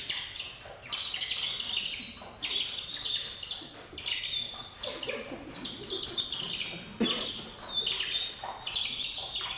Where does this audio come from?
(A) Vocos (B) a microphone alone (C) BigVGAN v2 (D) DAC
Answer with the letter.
B